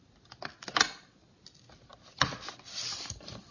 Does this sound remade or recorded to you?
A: recorded